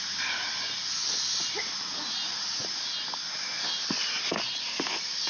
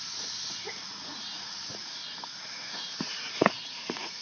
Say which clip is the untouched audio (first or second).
first